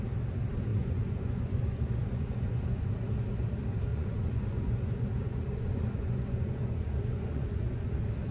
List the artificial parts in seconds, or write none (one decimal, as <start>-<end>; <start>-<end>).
0.7-2.9; 3.9-7.9